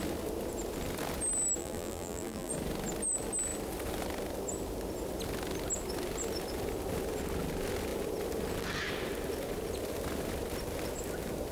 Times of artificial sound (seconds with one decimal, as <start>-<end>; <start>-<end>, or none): 1.6-2.5